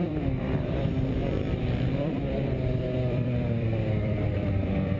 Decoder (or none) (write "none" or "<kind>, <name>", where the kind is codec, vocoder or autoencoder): vocoder, BigVGAN v2